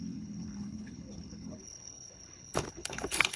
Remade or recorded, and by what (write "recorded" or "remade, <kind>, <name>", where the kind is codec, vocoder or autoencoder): remade, codec, HILCodec